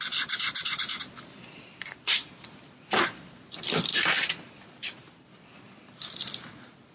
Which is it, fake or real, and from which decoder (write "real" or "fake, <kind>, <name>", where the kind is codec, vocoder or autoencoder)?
fake, vocoder, BigVGAN v2